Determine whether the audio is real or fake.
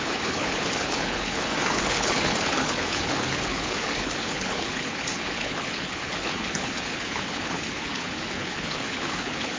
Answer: fake